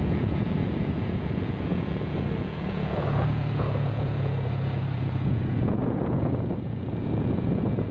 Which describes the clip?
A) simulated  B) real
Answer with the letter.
A